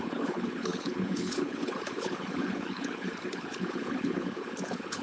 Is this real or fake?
fake